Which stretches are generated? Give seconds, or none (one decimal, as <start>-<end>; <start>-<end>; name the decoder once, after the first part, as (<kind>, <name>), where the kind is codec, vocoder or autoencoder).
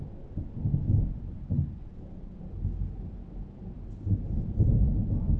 1.9-2.5 (vocoder, Vocos)